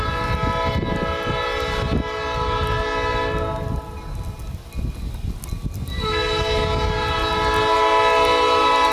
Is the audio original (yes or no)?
yes